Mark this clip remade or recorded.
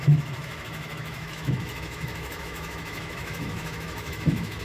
remade